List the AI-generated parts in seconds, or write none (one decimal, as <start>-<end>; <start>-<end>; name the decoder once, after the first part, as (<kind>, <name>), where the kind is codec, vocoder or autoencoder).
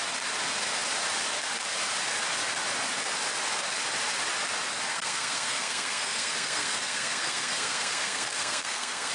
4.9-9.1 (codec, SNAC)